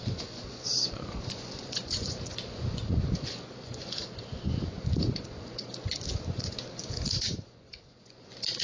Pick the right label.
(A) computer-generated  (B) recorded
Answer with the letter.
A